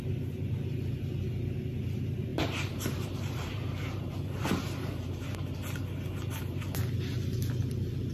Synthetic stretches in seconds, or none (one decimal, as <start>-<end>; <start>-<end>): 2.3-5.2